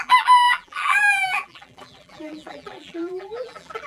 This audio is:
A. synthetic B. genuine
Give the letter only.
A